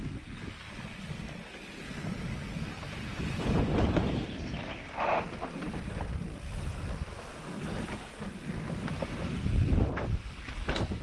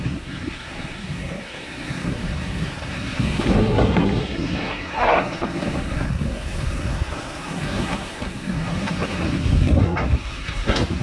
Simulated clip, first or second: second